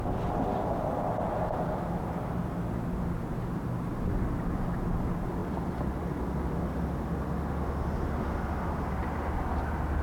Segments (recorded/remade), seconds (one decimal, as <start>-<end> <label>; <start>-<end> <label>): 0.0-10.0 recorded